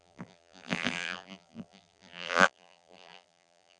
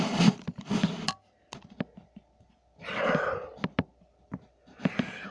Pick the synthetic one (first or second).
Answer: first